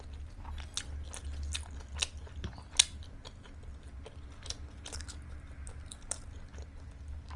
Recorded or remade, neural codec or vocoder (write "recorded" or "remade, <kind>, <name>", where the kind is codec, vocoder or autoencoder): recorded